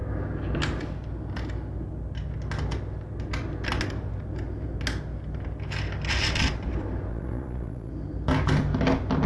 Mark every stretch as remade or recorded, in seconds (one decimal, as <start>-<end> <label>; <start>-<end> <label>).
0.0-7.1 recorded; 7.1-7.9 remade; 7.9-9.3 recorded